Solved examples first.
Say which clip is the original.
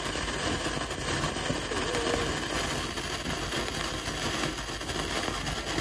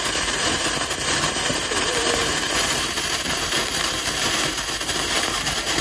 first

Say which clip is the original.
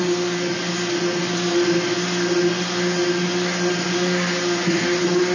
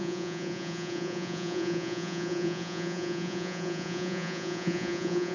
first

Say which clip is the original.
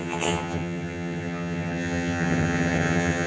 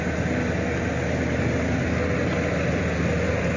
second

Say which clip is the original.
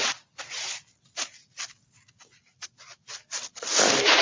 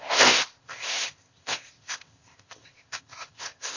first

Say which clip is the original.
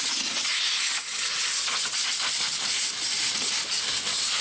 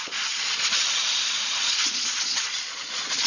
first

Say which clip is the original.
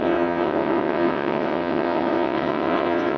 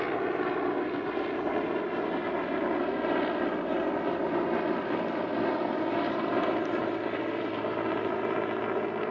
second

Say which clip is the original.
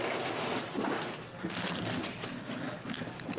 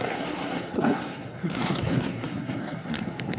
first